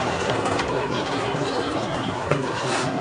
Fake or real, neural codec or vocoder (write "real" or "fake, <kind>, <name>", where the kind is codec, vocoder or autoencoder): fake, codec, SNAC